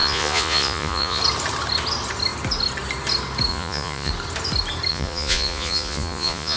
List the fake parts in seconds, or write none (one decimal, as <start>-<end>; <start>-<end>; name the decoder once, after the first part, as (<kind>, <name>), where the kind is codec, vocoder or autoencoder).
0.0-1.2 (vocoder, Vocos); 3.5-4.1; 4.9-6.6